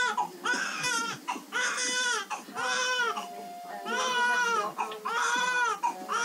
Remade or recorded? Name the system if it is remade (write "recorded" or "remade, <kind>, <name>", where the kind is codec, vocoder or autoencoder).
recorded